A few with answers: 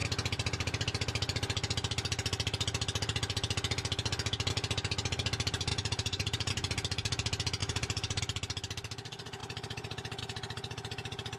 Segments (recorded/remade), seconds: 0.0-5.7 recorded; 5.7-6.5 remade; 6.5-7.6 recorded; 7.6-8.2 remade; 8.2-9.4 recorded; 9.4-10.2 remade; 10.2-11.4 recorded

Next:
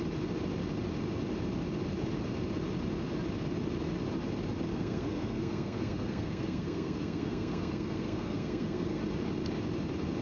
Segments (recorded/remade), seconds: 0.0-4.7 recorded; 4.7-9.0 remade; 9.0-10.2 recorded

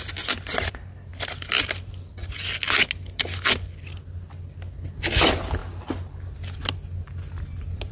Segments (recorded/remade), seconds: 0.0-7.9 recorded

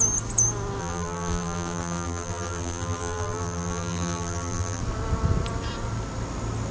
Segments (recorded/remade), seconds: 0.0-0.8 recorded; 0.8-4.8 remade; 4.8-6.7 recorded

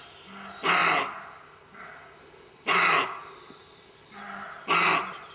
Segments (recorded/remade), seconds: 0.0-5.3 recorded

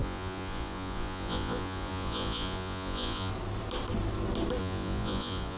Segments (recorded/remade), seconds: 0.0-3.3 remade; 3.3-4.6 recorded; 4.6-5.6 remade